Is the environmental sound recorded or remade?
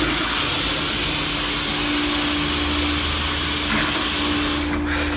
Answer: recorded